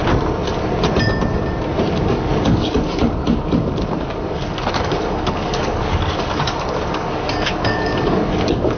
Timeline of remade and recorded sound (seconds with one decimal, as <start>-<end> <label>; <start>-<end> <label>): 0.0-2.0 recorded; 2.0-8.8 remade